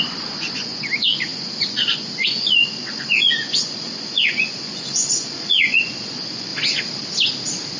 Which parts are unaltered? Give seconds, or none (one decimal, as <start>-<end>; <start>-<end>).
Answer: 6.5-7.8